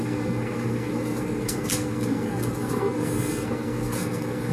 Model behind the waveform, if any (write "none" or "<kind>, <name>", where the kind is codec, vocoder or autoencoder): codec, SNAC